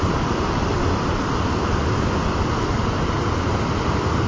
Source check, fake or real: real